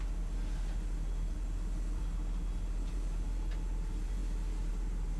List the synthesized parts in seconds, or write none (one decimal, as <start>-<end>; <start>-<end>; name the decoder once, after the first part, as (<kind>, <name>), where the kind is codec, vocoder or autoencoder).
none